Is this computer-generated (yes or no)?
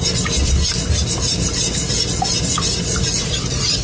no